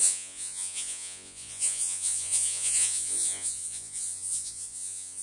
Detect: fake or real fake